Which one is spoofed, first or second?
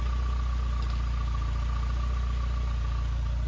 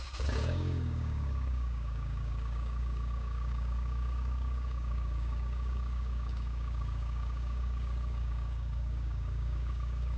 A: second